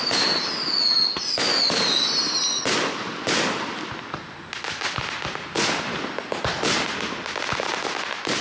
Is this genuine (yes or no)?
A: yes